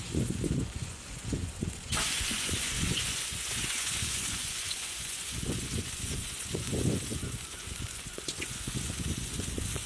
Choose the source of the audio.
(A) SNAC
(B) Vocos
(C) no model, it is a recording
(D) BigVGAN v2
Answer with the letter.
B